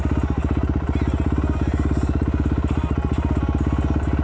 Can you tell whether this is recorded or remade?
recorded